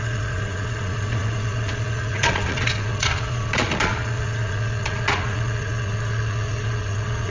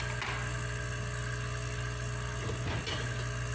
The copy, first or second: first